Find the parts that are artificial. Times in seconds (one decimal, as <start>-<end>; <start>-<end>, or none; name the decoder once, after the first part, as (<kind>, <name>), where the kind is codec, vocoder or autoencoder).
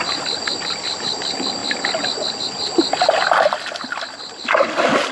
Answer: none